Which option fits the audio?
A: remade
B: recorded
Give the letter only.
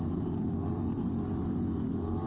A